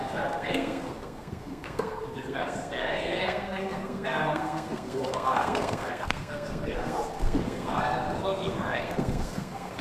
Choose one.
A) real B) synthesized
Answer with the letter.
B